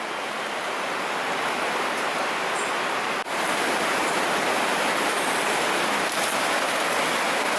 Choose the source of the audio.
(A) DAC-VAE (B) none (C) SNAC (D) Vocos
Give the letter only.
B